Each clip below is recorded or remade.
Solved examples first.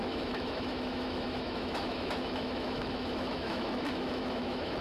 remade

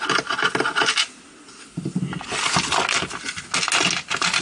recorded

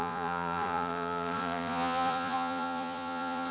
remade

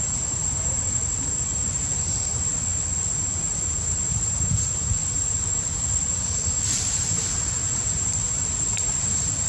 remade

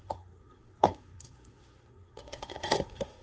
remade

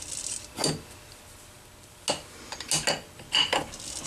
recorded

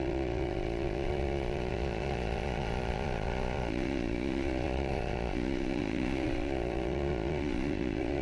remade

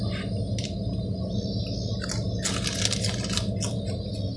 recorded